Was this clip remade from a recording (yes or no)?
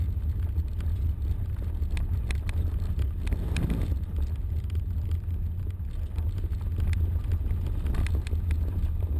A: no